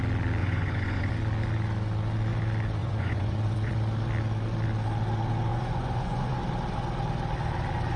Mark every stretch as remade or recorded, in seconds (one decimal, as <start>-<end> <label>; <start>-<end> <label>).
0.0-0.4 recorded; 0.4-1.1 remade; 1.1-2.8 recorded; 2.8-3.7 remade; 3.7-5.5 recorded; 5.5-6.4 remade; 6.4-8.0 recorded